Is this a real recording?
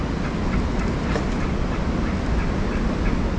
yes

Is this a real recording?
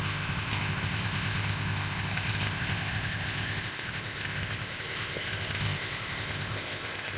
no